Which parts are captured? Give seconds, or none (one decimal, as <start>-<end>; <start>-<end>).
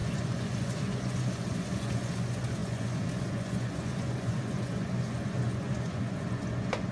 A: none